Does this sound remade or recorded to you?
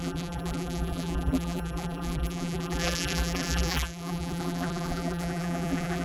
remade